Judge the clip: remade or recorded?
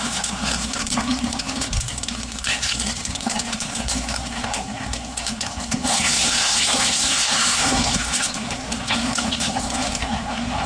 remade